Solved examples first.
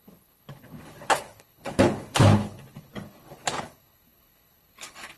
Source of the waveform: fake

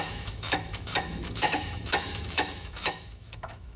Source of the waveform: fake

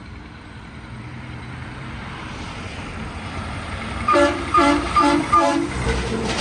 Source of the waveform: fake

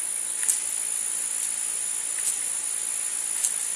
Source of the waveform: real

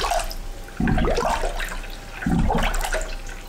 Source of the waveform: real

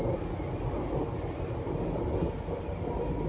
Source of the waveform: real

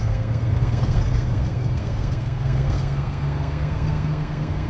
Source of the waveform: fake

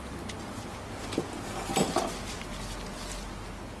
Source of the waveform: real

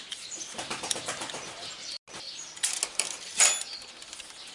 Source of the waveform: real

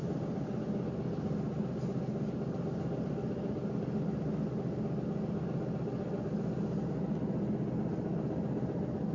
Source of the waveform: real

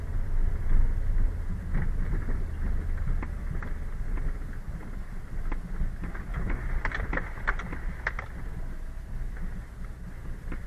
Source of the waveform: real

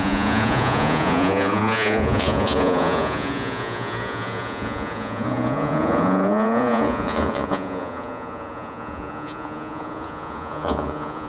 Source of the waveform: fake